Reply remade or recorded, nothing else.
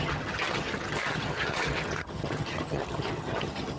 remade